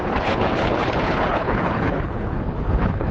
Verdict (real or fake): fake